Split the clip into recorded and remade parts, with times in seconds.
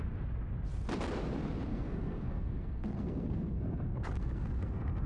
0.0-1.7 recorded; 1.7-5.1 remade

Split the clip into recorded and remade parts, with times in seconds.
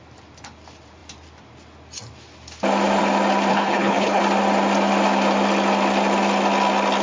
0.0-3.5 recorded; 3.5-4.2 remade; 4.2-7.0 recorded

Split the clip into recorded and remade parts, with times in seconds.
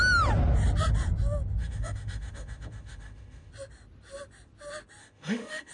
0.0-1.6 recorded; 1.6-3.5 remade; 3.5-5.0 recorded; 5.0-5.7 remade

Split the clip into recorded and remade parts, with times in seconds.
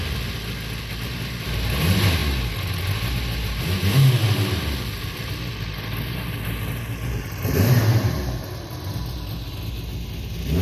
0.0-10.6 recorded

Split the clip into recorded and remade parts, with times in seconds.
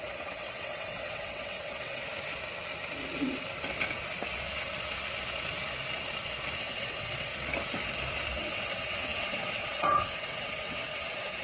0.0-2.0 remade; 2.0-6.6 recorded; 6.6-7.3 remade; 7.3-8.3 recorded; 8.3-11.4 remade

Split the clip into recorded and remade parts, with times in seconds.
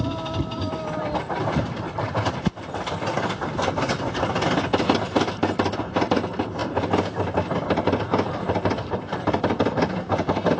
0.0-10.6 remade